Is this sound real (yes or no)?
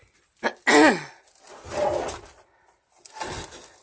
yes